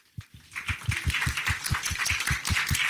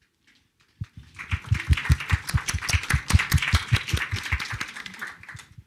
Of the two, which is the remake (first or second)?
first